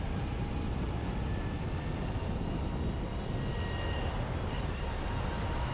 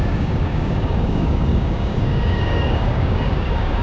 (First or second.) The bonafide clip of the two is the first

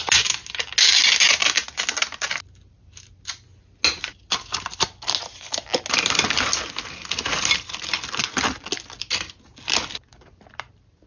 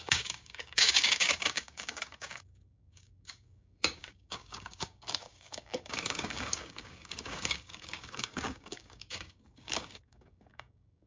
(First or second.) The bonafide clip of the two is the first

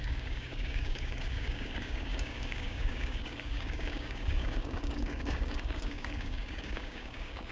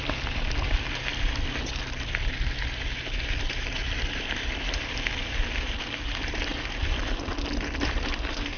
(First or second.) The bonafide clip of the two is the second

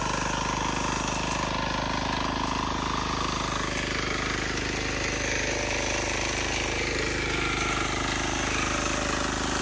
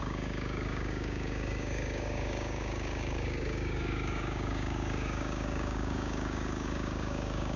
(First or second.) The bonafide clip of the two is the first